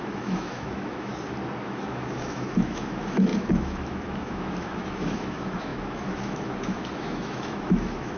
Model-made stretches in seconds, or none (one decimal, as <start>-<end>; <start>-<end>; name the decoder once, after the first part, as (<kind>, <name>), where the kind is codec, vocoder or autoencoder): 0.0-1.1 (autoencoder, DAC-VAE); 1.6-8.2